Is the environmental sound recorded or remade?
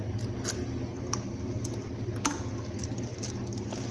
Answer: recorded